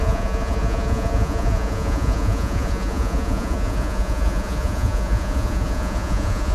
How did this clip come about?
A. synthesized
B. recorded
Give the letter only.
A